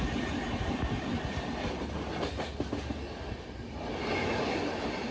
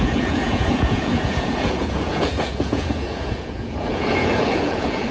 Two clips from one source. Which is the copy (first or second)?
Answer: second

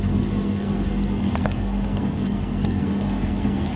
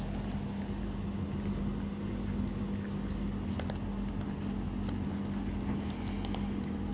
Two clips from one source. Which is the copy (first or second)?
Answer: first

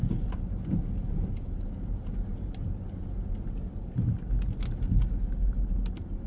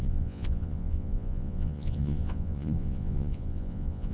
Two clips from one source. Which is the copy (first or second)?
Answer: second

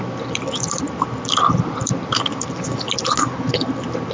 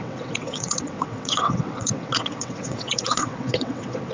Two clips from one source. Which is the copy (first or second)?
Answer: second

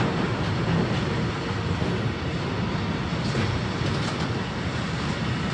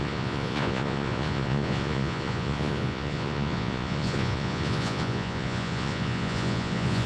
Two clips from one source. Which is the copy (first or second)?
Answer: second